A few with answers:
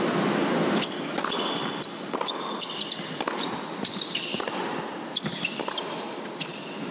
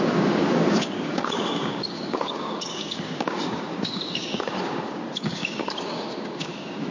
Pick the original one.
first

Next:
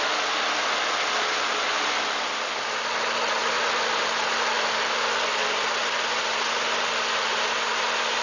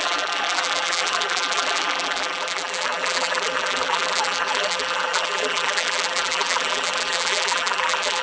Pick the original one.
first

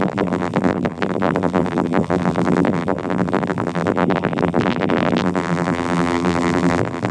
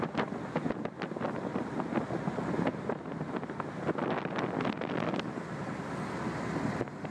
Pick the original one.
second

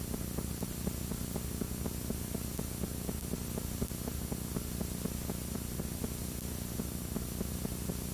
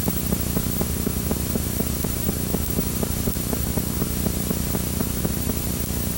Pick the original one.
first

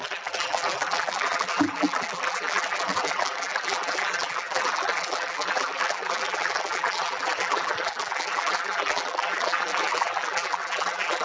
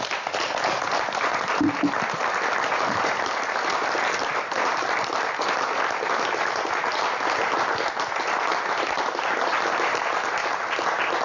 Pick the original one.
second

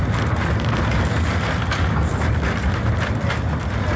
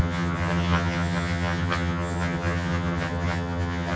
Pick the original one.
first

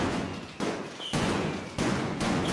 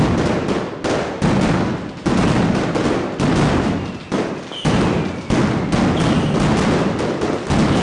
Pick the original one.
second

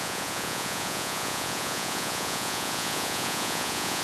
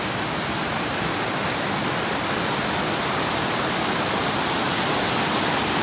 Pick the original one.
second